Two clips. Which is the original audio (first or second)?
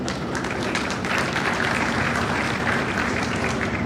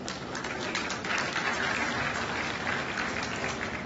second